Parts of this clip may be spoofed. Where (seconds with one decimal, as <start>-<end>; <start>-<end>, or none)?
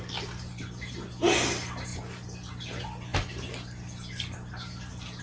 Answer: none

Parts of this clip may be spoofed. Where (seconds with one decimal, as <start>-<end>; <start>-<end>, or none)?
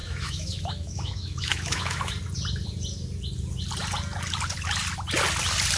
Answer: 0.0-2.1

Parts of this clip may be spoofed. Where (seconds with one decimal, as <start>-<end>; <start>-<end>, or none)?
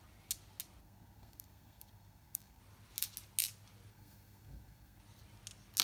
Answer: 0.8-2.6; 3.9-5.0